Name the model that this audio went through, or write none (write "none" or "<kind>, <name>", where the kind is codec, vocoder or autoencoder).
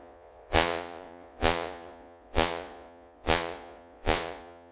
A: vocoder, Vocos